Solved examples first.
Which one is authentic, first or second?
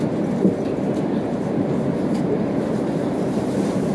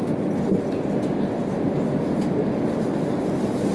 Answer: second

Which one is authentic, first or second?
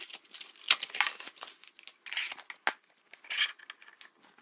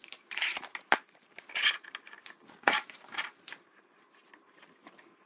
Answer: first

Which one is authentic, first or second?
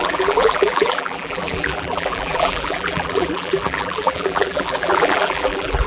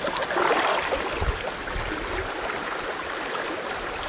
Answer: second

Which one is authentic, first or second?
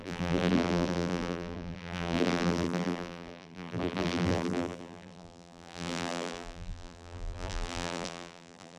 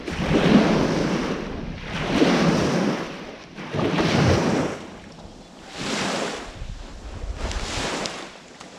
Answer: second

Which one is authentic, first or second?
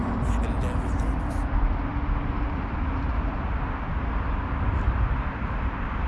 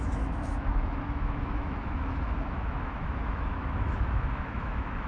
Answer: first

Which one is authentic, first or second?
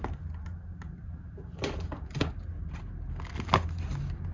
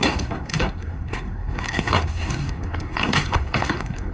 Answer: first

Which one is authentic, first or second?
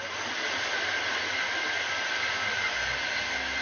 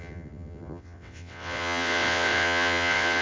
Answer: first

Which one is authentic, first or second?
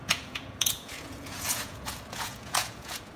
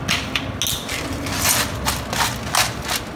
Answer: second